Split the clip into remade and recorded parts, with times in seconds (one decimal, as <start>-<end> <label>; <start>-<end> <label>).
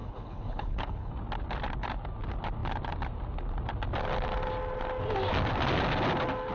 0.0-1.1 remade; 1.1-6.5 recorded